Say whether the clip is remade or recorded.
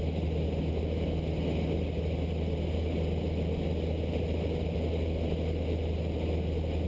recorded